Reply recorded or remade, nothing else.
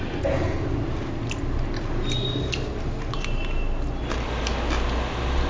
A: recorded